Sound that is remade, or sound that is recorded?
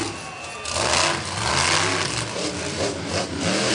recorded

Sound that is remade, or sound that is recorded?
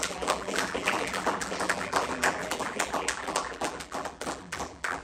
remade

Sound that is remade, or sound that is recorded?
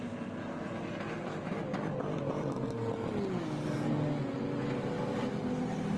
recorded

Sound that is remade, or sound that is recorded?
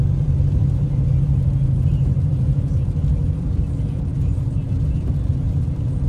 remade